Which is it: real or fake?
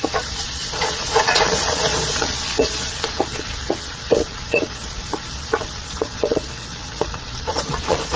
fake